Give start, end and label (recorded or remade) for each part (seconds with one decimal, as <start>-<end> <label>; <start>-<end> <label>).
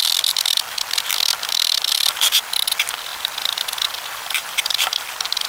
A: 0.0-3.1 recorded; 3.1-5.1 remade; 5.1-5.5 recorded